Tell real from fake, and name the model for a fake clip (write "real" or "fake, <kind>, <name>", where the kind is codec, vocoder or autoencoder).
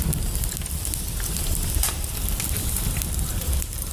fake, vocoder, BigVGAN v2